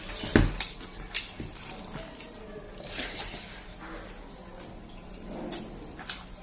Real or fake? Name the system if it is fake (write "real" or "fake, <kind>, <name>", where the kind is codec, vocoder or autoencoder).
real